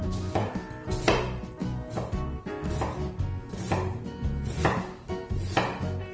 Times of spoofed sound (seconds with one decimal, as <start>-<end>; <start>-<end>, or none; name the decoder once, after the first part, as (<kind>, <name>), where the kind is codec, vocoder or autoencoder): 0.0-0.5 (autoencoder, DAC-VAE)